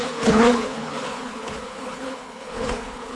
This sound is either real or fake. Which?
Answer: fake